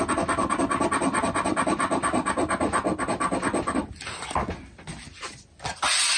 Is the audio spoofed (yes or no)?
no